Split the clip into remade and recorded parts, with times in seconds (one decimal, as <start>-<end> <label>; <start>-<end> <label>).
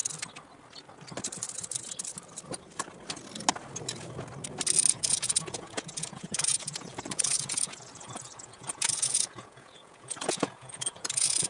0.0-4.9 recorded; 4.9-11.5 remade